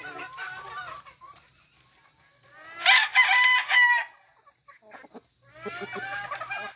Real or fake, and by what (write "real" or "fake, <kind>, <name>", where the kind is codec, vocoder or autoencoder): real